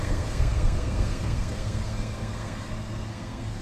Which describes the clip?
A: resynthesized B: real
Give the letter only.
A